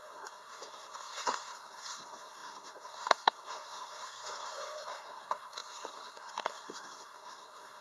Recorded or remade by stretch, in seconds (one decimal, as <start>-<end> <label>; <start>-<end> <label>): 0.0-7.8 remade